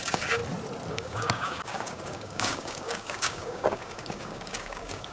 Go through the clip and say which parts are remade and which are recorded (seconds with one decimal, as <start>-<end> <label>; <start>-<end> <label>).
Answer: 0.0-0.4 remade; 0.4-0.9 recorded; 0.9-5.1 remade